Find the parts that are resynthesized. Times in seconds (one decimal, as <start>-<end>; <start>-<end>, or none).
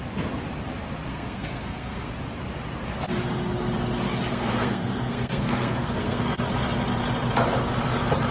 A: 1.1-2.1; 4.3-6.2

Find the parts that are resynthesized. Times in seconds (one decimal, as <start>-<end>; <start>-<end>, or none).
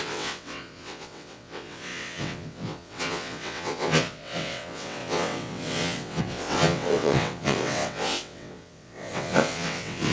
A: 0.0-10.1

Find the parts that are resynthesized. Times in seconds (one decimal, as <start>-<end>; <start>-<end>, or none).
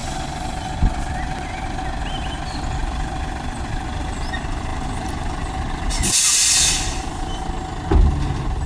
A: 0.0-1.8; 2.8-4.3; 4.7-7.1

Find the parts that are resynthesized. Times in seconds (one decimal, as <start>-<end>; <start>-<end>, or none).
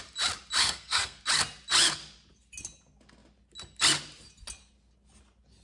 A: 0.6-1.2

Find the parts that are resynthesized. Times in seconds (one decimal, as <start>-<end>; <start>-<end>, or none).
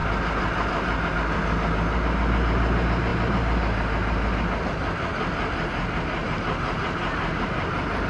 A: none